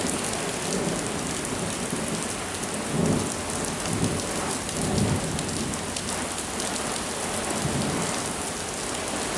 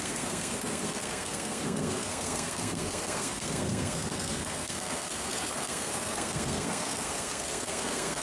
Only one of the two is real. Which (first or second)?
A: first